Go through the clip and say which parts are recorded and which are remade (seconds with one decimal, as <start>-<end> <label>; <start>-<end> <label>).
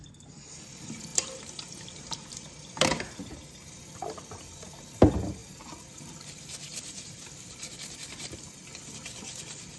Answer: 0.0-1.1 recorded; 1.1-3.2 remade; 3.2-6.7 recorded; 6.7-7.2 remade; 7.2-9.8 recorded